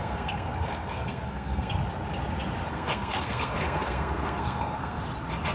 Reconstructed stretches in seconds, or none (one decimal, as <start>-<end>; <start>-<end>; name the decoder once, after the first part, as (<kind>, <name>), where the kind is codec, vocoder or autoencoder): 0.0-1.7 (codec, SNAC); 2.7-5.0